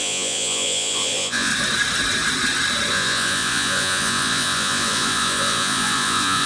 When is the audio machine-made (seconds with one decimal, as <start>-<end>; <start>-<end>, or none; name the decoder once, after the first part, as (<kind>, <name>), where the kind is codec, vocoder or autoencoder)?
0.0-1.5 (vocoder, Vocos); 2.9-6.5